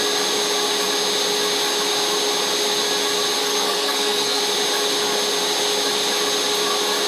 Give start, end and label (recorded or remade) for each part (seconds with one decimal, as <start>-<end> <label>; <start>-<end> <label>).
0.0-3.4 recorded; 3.4-4.4 remade; 4.4-7.1 recorded